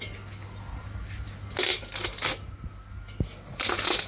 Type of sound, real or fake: real